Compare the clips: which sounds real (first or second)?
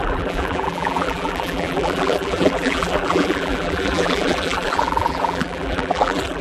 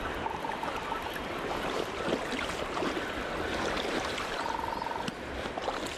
second